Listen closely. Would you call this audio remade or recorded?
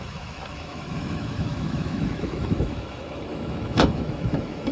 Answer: remade